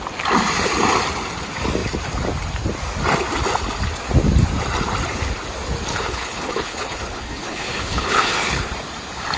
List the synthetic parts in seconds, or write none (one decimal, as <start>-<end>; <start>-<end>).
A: 5.9-8.7